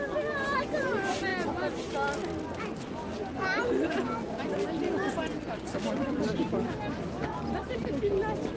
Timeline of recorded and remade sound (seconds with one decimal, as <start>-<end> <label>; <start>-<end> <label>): 0.0-8.6 recorded